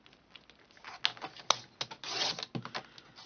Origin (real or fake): real